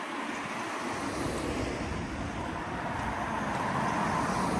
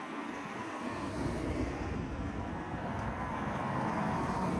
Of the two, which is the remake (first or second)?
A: second